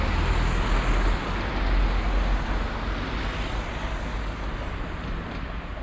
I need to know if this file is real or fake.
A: real